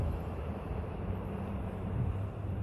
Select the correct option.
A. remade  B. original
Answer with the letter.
A